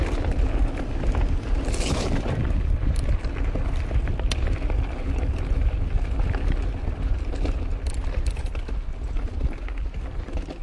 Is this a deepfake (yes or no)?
no